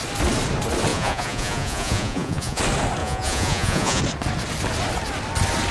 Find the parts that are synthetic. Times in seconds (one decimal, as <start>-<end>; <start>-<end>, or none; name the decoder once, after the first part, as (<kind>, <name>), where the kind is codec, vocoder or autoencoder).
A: 0.9-2.6 (vocoder, Vocos); 3.0-4.0